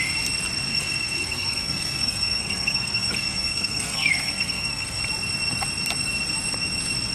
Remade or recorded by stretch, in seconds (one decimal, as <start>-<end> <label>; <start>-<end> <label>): 0.0-0.7 recorded; 0.7-5.0 remade; 5.0-7.1 recorded